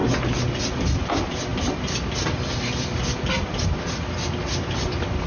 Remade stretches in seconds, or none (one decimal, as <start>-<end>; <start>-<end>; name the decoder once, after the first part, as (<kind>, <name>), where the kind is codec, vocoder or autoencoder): none

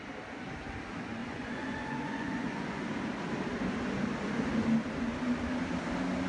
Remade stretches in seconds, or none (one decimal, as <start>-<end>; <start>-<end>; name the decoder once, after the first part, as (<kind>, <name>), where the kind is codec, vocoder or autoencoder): 1.2-2.8 (vocoder, Vocos)

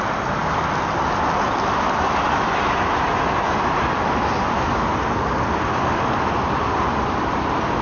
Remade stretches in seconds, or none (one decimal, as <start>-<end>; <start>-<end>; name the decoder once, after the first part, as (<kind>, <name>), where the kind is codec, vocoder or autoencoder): none

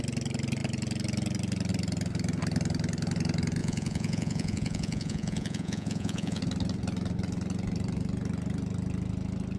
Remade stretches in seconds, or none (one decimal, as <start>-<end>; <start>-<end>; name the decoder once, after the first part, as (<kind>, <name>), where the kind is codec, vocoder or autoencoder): 3.6-6.4 (vocoder, Vocos)

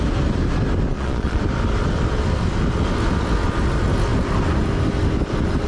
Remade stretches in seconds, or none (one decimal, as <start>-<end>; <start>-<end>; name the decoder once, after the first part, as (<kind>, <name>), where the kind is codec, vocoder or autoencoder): 0.9-1.4 (vocoder, Vocos)

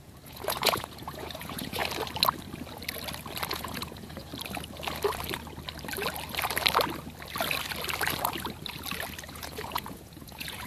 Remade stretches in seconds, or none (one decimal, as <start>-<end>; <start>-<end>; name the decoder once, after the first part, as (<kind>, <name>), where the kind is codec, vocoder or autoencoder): 0.0-1.8 (vocoder, Vocos); 3.5-4.3; 9.3-10.7

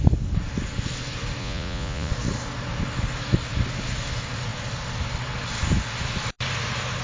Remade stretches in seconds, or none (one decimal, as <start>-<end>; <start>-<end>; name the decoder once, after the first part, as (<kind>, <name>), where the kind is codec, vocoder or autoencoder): 1.4-2.1 (vocoder, Vocos)